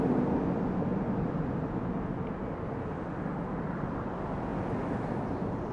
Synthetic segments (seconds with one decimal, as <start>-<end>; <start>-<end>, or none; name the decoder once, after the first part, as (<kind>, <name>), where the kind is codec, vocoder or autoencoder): none